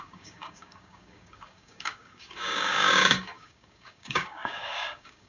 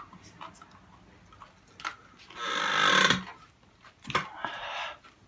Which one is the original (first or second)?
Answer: second